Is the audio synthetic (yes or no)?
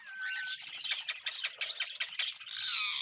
no